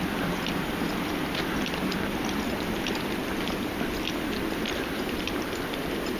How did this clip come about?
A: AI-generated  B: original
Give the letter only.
B